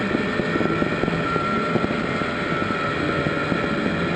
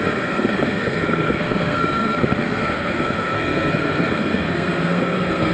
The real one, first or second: first